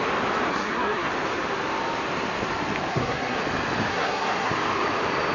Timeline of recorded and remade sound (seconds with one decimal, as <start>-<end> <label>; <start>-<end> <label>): 0.0-0.5 recorded; 0.5-1.1 remade; 1.1-2.9 recorded; 2.9-3.4 remade; 3.4-3.9 recorded; 3.9-4.5 remade; 4.5-5.3 recorded